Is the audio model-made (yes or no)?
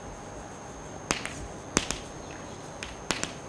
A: no